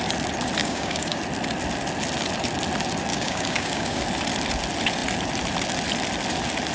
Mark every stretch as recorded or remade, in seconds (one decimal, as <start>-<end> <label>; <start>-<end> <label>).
0.0-0.6 recorded; 0.6-1.2 remade; 1.2-3.1 recorded; 3.1-4.0 remade; 4.0-6.7 recorded